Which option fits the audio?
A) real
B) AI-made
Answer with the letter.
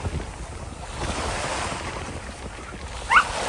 A